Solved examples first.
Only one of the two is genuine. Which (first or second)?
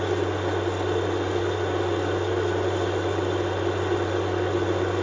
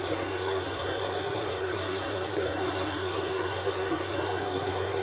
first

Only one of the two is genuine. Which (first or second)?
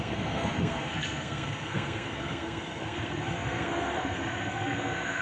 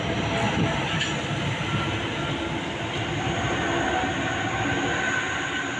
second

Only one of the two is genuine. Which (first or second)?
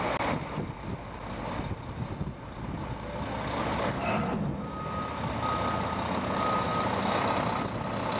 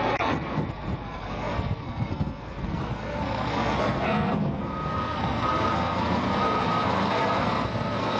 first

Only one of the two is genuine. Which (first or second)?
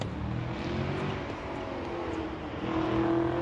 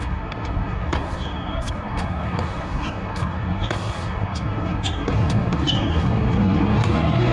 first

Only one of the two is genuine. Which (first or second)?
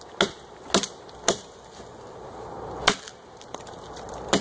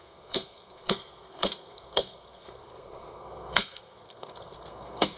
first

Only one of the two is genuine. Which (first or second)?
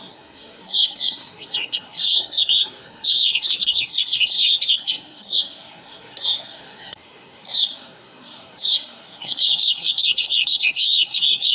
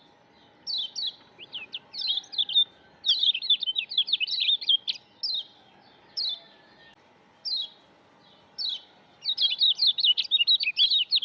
second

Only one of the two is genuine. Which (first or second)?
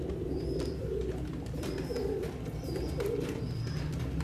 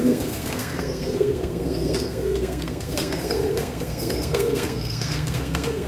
first